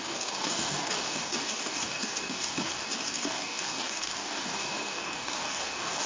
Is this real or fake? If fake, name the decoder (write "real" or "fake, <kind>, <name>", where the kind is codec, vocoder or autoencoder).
fake, codec, DAC